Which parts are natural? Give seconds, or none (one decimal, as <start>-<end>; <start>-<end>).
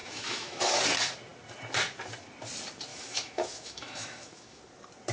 0.8-2.9; 4.6-5.1